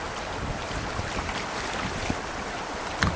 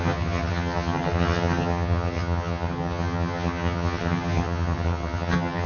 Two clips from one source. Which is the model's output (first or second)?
second